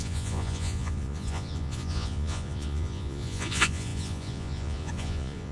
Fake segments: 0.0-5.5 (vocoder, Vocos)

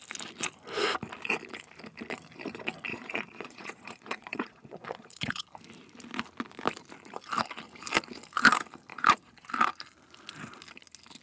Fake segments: 2.9-5.5 (vocoder, Vocos); 8.9-9.5

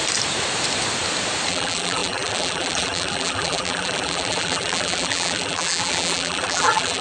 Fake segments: 1.5-7.0 (vocoder, BigVGAN v2)

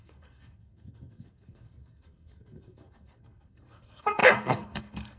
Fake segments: 0.0-5.2 (codec, SNAC)

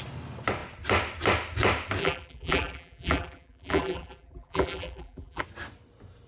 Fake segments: 2.0-5.4 (vocoder, BigVGAN v2)

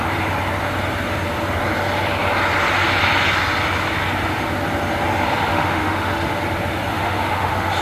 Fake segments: 5.5-6.4 (autoencoder, DAC-VAE); 6.9-7.8

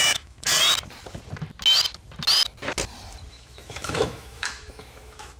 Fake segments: 0.0-0.5 (autoencoder, DAC-VAE); 3.3-5.4